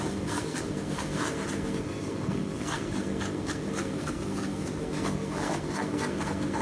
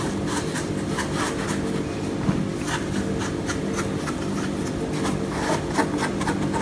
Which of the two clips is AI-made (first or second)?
first